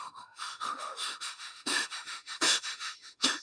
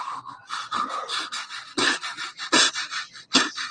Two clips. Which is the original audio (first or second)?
second